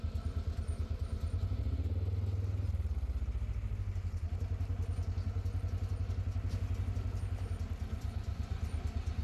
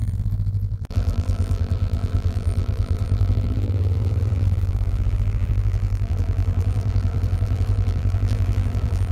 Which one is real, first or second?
first